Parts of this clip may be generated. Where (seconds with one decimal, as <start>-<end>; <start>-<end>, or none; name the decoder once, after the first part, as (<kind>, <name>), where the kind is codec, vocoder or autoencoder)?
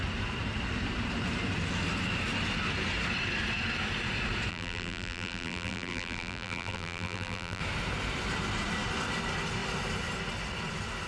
4.5-7.6 (vocoder, BigVGAN v2)